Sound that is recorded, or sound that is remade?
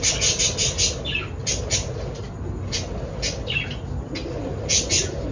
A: recorded